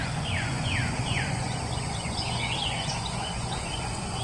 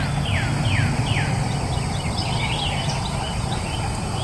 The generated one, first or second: first